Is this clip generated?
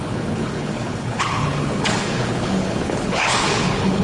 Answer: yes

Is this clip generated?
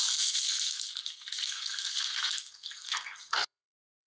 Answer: yes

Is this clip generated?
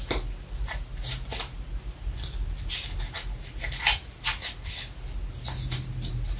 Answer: no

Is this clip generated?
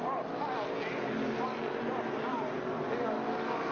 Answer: no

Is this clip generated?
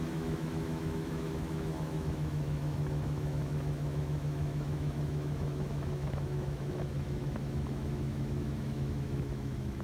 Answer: yes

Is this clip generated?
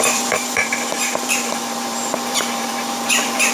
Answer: yes